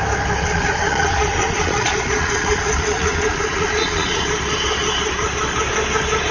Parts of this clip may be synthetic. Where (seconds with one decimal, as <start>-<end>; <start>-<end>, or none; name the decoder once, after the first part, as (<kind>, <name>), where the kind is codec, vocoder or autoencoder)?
0.4-4.2 (vocoder, Vocos)